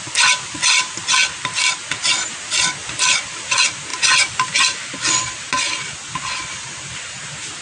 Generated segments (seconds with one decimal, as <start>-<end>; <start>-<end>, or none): none